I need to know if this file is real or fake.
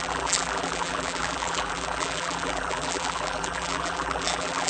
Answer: fake